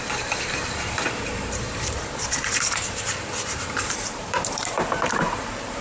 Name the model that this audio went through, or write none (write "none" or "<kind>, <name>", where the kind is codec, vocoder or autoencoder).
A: vocoder, BigVGAN v2